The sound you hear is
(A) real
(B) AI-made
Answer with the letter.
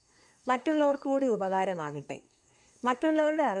B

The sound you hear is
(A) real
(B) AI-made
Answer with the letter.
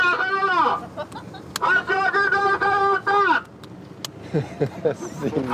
A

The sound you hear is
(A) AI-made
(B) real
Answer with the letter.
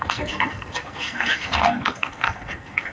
A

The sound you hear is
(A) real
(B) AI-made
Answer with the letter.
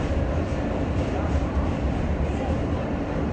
B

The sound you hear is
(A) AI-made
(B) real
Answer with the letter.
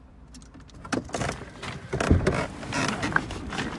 A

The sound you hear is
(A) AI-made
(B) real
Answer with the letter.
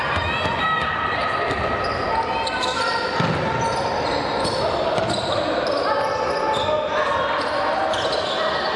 B